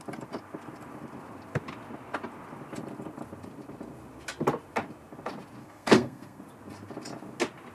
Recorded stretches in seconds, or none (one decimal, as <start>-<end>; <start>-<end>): 0.0-5.6; 6.4-7.7

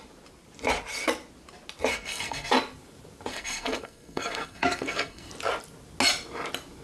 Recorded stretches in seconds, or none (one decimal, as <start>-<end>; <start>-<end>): 0.0-1.9; 2.5-3.3; 5.3-6.8

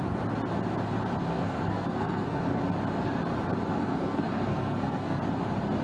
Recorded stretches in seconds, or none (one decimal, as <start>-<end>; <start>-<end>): 0.0-1.3; 2.6-3.8; 5.2-5.8